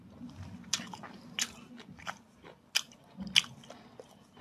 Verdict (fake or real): real